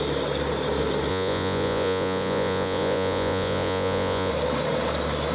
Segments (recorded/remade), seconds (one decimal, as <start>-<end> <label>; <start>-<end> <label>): 0.0-1.1 recorded; 1.1-4.3 remade; 4.3-5.3 recorded